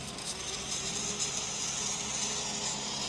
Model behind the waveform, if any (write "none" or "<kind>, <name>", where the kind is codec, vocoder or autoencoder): none